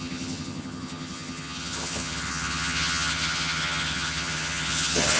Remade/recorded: remade